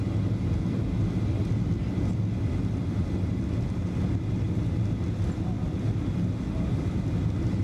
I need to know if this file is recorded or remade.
recorded